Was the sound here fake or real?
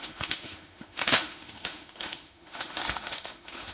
fake